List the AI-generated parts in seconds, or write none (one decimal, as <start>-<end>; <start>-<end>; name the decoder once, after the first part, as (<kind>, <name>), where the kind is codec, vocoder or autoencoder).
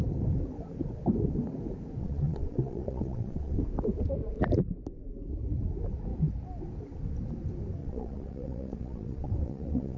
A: 2.0-3.6 (vocoder, WaveNeXt); 7.8-10.0